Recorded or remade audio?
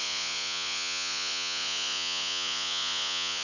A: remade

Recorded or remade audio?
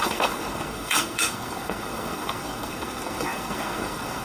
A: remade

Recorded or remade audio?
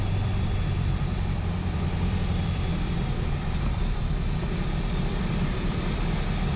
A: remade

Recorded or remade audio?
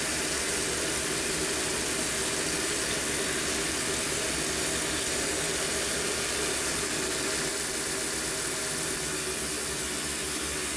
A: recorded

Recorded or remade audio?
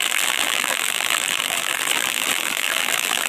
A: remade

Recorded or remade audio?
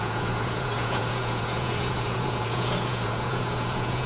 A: remade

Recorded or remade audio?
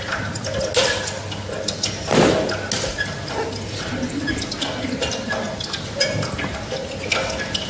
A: recorded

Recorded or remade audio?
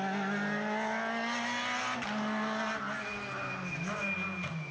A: recorded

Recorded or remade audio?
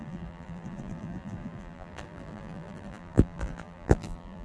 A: remade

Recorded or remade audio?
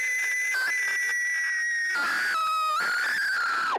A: recorded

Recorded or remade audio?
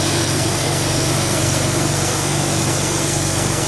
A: remade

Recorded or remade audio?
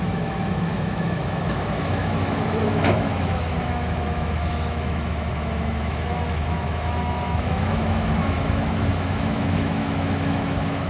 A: remade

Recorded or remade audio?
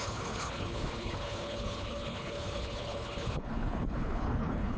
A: remade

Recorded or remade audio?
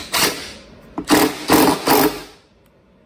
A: recorded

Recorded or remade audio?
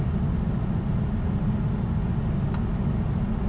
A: recorded